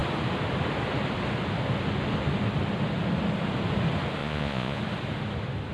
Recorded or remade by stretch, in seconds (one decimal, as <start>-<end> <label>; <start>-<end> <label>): 0.0-4.2 recorded; 4.2-4.8 remade; 4.8-5.7 recorded